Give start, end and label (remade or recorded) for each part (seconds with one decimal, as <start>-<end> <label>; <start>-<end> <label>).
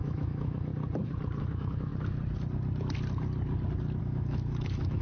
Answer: 0.0-0.7 remade; 0.7-1.4 recorded; 1.4-1.9 remade; 1.9-4.0 recorded; 4.0-5.0 remade